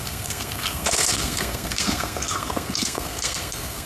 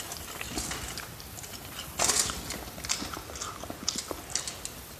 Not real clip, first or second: first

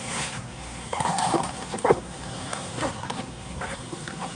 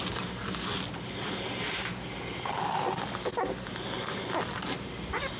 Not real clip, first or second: first